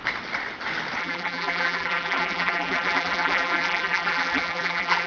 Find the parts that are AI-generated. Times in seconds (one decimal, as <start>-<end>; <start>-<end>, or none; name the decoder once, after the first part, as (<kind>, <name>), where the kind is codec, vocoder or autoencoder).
1.0-5.1 (vocoder, BigVGAN v2)